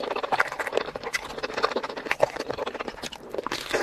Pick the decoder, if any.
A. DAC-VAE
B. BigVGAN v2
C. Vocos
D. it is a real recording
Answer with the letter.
D